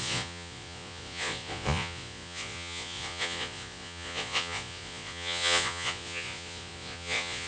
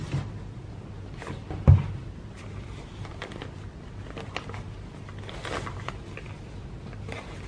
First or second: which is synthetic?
first